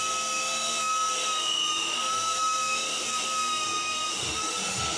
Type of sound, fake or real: fake